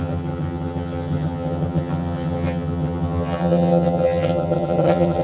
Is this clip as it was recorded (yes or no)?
no